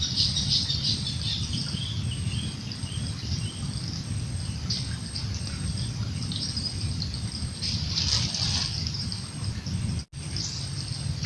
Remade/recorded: recorded